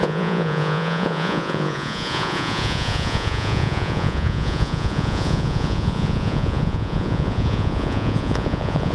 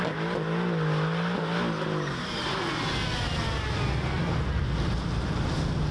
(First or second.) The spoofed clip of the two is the first